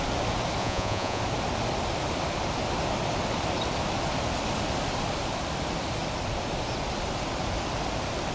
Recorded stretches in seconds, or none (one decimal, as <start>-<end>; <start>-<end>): 0.0-0.6; 1.2-8.3